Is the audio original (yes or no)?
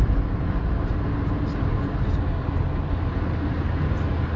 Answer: yes